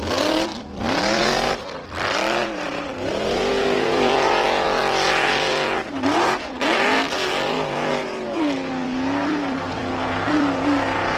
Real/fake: fake